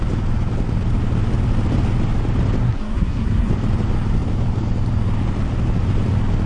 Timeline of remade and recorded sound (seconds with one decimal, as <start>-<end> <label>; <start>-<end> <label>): 0.0-2.6 recorded; 2.6-3.5 remade; 3.5-6.5 recorded